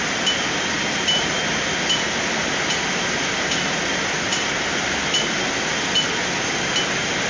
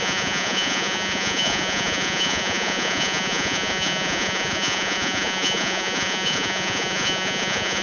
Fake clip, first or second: second